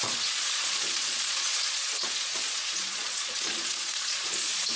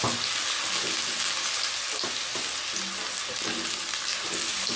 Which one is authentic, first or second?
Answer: second